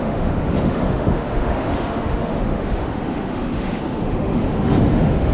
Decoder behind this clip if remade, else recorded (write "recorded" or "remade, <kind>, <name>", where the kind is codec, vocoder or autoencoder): remade, autoencoder, DAC-VAE